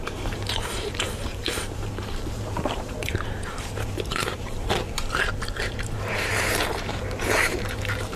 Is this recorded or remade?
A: remade